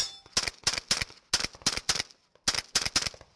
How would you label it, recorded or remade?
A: recorded